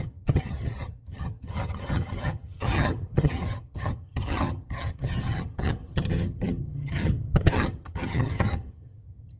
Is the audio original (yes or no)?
no